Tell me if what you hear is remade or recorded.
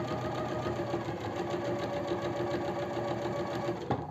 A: recorded